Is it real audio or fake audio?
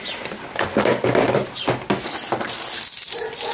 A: real